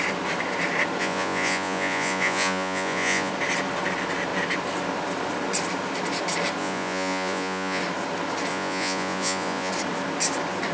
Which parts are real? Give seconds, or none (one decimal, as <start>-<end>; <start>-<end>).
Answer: 0.0-1.0; 3.3-6.6; 7.8-8.5; 9.7-10.7